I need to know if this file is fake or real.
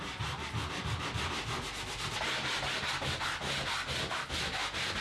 real